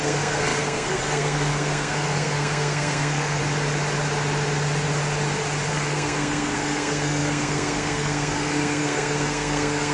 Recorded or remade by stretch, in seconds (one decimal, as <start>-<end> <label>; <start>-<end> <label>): 0.0-3.4 remade; 3.4-5.7 recorded; 5.7-9.9 remade